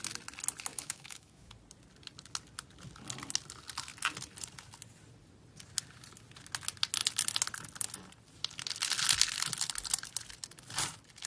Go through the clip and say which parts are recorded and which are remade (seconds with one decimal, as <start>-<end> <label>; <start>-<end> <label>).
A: 0.0-0.7 recorded; 0.7-1.5 remade; 1.5-11.3 recorded